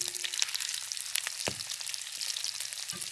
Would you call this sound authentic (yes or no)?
yes